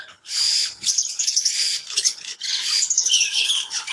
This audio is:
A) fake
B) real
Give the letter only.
A